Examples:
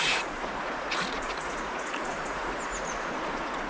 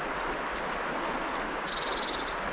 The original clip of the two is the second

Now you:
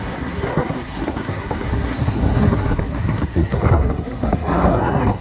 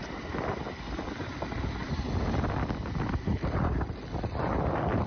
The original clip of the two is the second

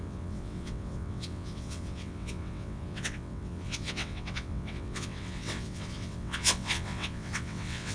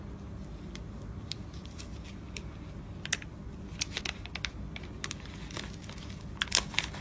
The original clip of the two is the second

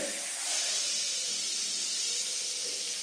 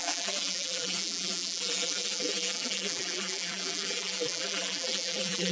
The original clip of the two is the first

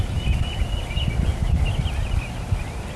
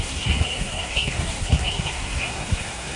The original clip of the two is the first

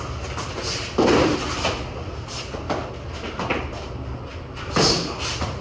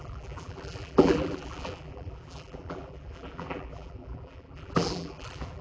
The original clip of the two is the first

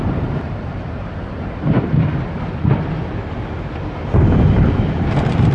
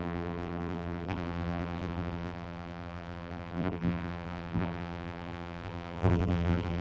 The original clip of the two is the first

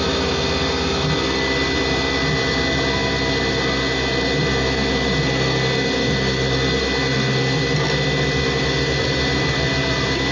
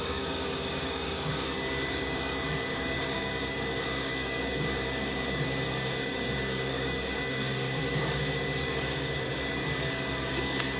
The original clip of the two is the first